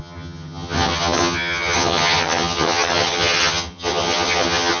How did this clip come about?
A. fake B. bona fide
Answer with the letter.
A